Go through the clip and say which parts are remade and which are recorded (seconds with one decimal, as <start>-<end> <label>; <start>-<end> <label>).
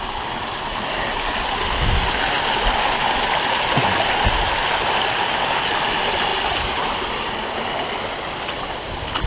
0.0-9.3 recorded